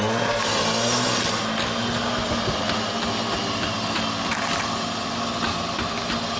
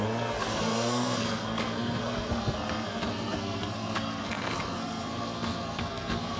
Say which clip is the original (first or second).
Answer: first